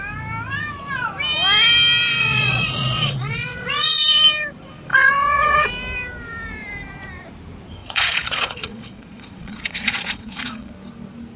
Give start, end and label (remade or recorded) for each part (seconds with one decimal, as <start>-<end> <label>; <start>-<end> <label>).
0.0-2.2 recorded; 2.2-4.0 remade; 4.0-4.9 recorded; 4.9-5.7 remade; 5.7-7.8 recorded; 7.8-10.7 remade; 10.7-11.4 recorded